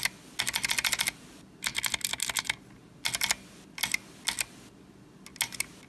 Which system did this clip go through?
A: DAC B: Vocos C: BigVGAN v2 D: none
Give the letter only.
D